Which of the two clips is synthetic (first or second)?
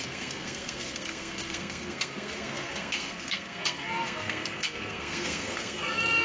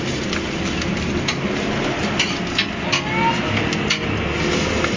first